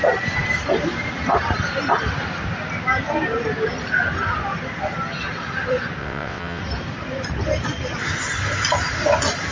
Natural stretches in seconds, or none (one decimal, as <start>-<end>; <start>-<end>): 0.0-6.0; 6.6-9.5